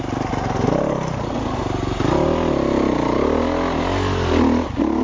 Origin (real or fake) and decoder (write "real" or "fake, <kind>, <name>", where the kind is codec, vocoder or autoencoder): real